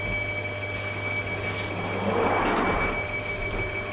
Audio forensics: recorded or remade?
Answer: recorded